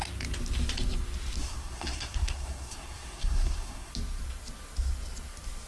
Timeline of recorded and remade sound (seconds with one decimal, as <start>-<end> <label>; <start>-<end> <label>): 0.0-1.4 recorded; 1.4-3.9 remade; 3.9-5.7 recorded